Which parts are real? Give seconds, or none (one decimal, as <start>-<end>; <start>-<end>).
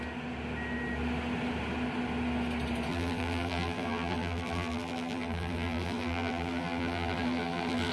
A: 0.0-2.9